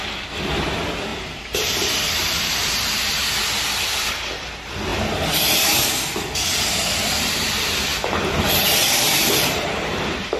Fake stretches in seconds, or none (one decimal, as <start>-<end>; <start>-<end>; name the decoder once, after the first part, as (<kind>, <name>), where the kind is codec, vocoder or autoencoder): 1.1-3.1 (vocoder, BigVGAN v2); 4.9-5.6; 8.8-10.4